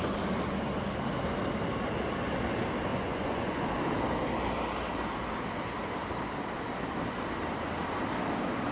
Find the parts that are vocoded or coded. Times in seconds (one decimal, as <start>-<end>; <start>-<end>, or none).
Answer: 2.9-3.7